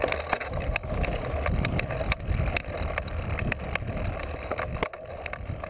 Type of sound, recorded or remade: recorded